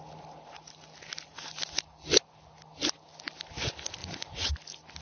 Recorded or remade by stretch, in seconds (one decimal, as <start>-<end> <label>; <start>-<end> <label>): 0.0-4.0 recorded; 4.0-4.5 remade; 4.5-5.0 recorded